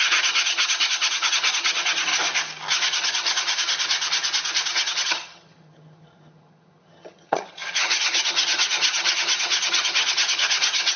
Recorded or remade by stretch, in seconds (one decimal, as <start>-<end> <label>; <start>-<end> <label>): 0.0-2.1 remade; 2.1-2.7 recorded; 2.7-3.7 remade; 3.7-4.7 recorded; 4.7-11.0 remade